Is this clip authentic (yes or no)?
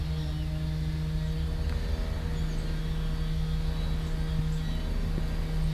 yes